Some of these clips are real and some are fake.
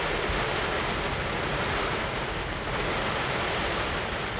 real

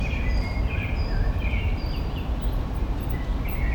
fake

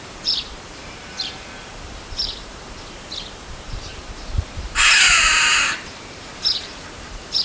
fake